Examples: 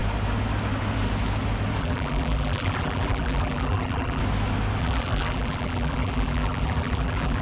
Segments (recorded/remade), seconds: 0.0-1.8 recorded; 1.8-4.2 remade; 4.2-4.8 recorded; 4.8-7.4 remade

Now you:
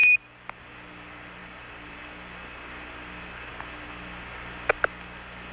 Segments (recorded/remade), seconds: 0.0-1.4 recorded; 1.4-2.0 remade; 2.0-5.5 recorded

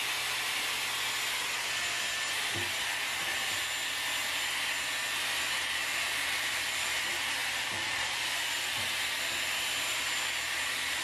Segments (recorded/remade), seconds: 0.0-5.8 recorded; 5.8-7.0 remade; 7.0-7.4 recorded; 7.4-9.0 remade; 9.0-11.0 recorded

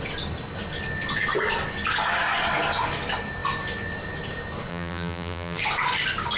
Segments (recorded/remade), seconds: 0.0-4.7 recorded; 4.7-5.6 remade; 5.6-6.4 recorded

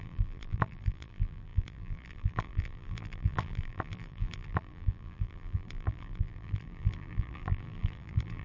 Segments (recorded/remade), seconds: 0.0-8.4 remade

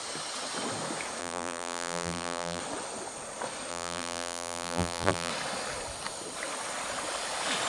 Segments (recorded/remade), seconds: 0.0-1.2 recorded; 1.2-2.6 remade; 2.6-3.7 recorded; 3.7-5.3 remade; 5.3-7.7 recorded

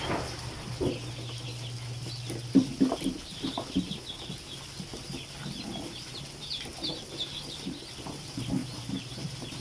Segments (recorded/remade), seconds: 0.0-8.6 recorded; 8.6-9.6 remade